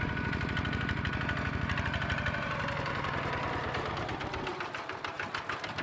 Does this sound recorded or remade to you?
recorded